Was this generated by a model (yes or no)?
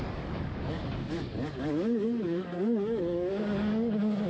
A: yes